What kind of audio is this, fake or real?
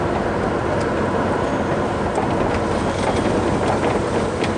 real